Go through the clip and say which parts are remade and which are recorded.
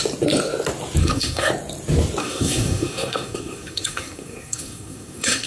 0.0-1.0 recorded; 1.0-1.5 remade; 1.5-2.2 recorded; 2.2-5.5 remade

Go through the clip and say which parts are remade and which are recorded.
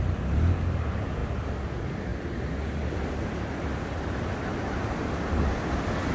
0.0-6.1 recorded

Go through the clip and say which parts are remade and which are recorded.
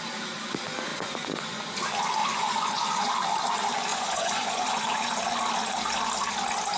0.0-0.9 recorded; 0.9-1.7 remade; 1.7-2.2 recorded; 2.2-3.1 remade; 3.1-3.9 recorded; 3.9-5.4 remade; 5.4-6.8 recorded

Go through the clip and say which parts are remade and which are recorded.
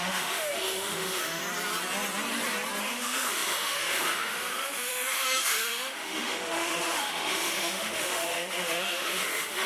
0.0-1.4 remade; 1.4-2.8 recorded; 2.8-9.7 remade